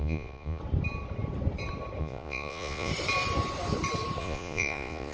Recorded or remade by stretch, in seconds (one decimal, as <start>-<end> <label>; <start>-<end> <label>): 0.0-0.6 remade; 0.6-2.0 recorded; 2.0-2.9 remade; 2.9-4.2 recorded; 4.2-5.1 remade